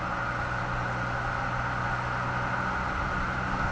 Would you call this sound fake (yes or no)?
no